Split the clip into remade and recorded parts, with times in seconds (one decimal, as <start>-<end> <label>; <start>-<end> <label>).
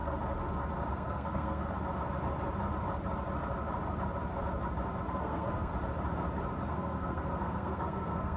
0.0-0.9 recorded; 0.9-1.6 remade; 1.6-5.1 recorded; 5.1-5.7 remade; 5.7-6.7 recorded; 6.7-8.4 remade